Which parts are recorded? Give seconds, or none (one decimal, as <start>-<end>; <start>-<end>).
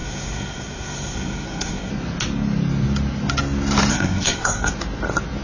1.9-3.9; 4.7-5.4